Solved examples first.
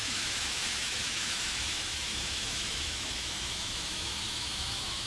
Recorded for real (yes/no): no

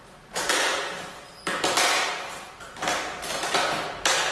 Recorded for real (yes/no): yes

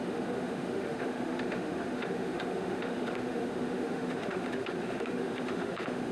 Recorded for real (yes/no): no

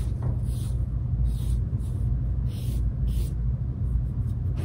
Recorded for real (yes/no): yes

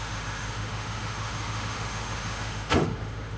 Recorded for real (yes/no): no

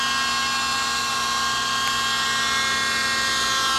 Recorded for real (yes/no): yes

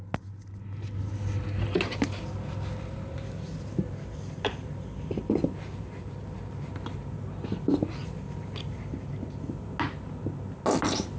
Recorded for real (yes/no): yes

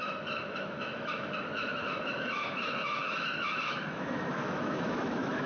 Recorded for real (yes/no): no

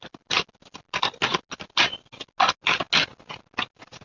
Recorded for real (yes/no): yes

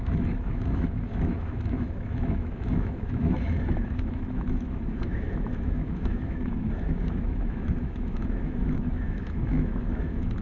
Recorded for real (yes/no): no